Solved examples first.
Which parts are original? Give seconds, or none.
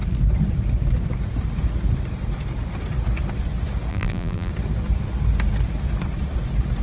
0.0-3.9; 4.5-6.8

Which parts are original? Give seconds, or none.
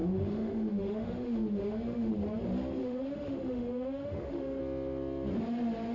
2.1-2.8; 4.6-5.9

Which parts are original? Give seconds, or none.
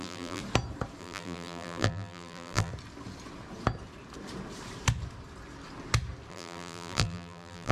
0.4-1.0; 2.7-6.3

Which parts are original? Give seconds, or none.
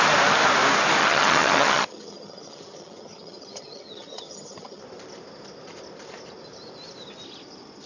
0.0-1.0; 4.8-7.9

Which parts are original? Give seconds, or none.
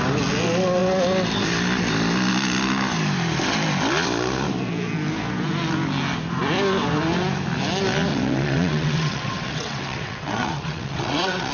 0.0-8.1